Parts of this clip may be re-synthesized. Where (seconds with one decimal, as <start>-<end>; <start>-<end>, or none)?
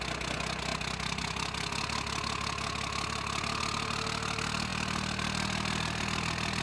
none